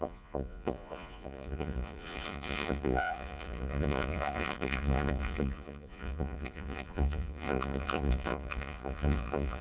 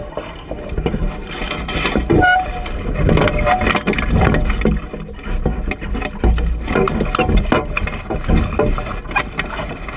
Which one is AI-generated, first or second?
first